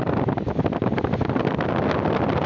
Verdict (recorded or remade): recorded